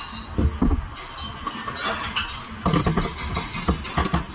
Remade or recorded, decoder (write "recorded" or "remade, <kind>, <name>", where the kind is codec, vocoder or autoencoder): recorded